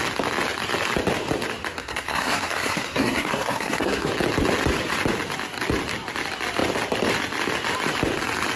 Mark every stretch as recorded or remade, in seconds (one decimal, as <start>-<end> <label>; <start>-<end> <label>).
0.0-1.8 recorded; 1.8-4.1 remade; 4.1-8.6 recorded